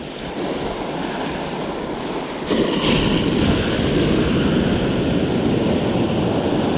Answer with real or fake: real